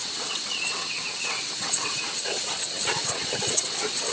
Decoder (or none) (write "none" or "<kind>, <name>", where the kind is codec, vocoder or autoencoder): vocoder, WaveNeXt